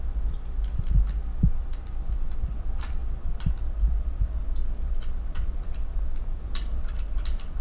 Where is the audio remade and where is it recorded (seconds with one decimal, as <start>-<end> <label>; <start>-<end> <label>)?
0.0-7.6 recorded

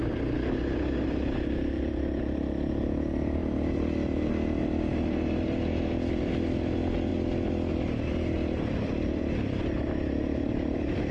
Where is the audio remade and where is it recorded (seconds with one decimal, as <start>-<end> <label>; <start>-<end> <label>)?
0.0-11.1 recorded

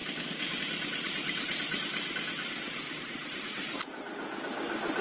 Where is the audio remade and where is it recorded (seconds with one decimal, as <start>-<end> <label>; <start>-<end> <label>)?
0.0-1.7 recorded; 1.7-3.5 remade; 3.5-5.0 recorded

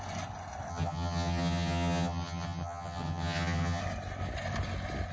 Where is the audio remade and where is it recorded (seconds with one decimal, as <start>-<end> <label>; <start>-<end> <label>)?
0.0-0.7 recorded; 0.7-3.8 remade; 3.8-5.1 recorded

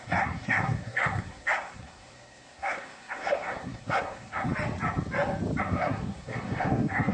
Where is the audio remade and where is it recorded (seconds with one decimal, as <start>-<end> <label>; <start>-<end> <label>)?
0.0-4.5 remade; 4.5-5.6 recorded; 5.6-7.1 remade